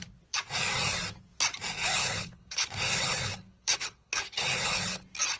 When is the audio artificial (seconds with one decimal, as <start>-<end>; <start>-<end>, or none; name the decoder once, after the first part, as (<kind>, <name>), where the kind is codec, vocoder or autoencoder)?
1.8-5.0 (codec, HILCodec)